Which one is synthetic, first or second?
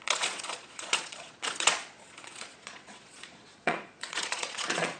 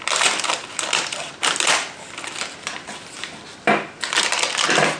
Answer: first